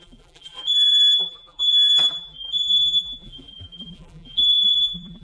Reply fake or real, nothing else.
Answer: fake